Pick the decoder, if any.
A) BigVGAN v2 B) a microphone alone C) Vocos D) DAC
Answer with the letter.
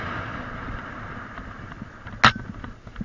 B